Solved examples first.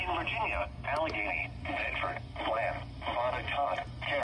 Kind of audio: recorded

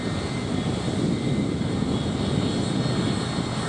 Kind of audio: recorded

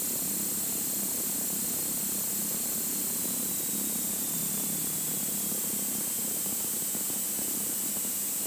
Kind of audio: recorded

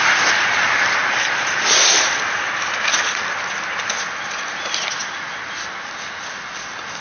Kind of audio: recorded